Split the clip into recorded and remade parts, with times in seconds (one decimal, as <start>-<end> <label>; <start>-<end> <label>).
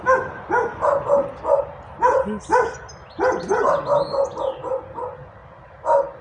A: 0.0-6.2 recorded